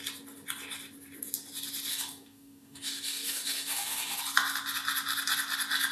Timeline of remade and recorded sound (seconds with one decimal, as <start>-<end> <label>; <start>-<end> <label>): 0.0-1.9 recorded; 1.9-4.2 remade; 4.2-5.9 recorded